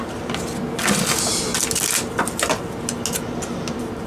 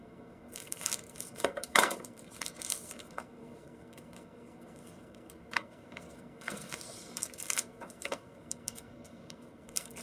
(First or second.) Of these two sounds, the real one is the first